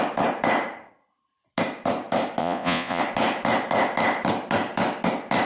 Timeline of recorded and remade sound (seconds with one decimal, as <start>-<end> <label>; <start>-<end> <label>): 0.0-2.4 recorded; 2.4-3.0 remade; 3.0-5.5 recorded